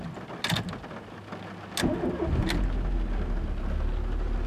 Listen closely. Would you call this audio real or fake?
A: real